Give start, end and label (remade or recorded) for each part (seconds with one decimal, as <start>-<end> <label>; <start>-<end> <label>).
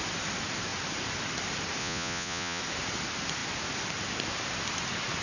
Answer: 0.0-1.8 recorded; 1.8-2.6 remade; 2.6-5.2 recorded